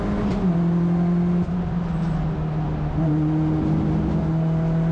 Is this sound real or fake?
real